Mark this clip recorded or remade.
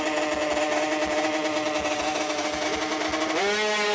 recorded